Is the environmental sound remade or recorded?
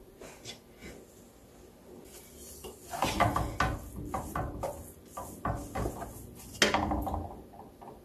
recorded